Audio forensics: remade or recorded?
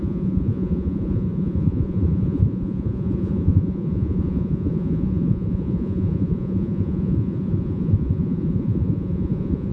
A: remade